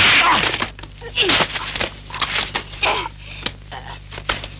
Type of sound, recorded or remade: recorded